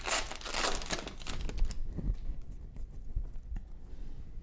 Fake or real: real